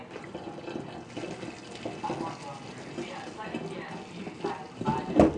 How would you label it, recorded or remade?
recorded